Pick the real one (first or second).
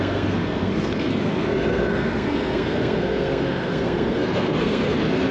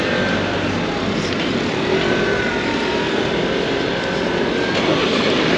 second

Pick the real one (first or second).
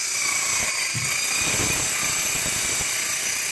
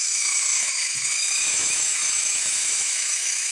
first